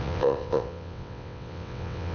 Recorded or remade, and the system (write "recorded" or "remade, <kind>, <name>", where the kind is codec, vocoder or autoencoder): remade, vocoder, WaveNeXt